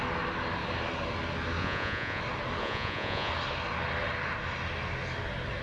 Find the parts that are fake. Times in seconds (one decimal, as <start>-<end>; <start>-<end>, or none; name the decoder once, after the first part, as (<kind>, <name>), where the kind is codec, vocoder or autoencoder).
1.6-2.2 (vocoder, Vocos); 2.6-3.3